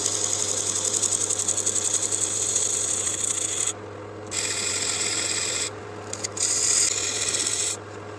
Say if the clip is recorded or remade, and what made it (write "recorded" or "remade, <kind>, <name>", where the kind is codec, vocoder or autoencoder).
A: recorded